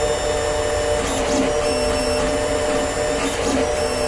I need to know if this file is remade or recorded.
recorded